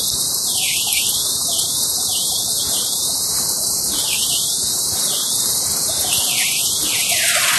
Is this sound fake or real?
fake